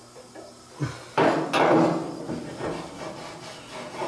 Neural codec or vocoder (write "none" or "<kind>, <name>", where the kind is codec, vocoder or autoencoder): none